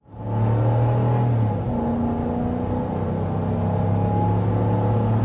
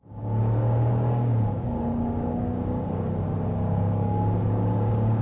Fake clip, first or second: second